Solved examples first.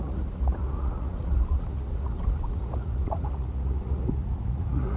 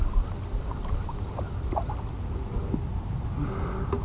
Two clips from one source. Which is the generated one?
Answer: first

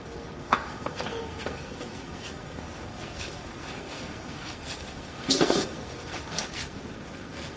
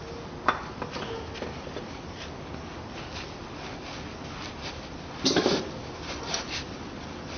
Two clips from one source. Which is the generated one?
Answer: first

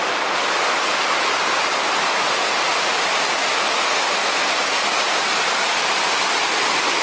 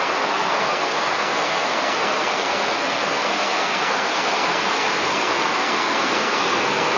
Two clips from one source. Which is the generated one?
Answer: second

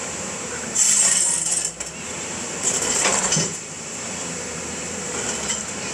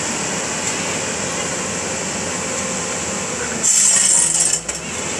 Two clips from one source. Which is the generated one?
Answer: first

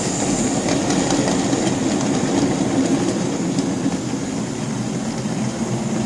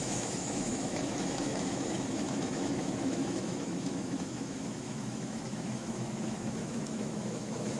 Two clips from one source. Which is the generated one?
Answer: second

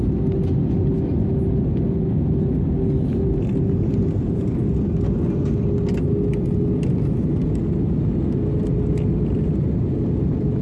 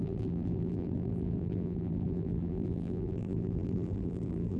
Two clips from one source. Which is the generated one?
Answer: second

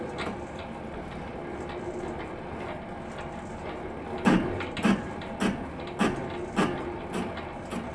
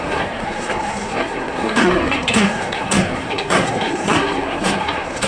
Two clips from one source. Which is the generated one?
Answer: second